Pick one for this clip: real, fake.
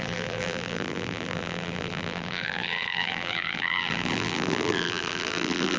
fake